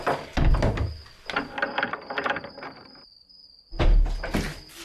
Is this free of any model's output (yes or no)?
yes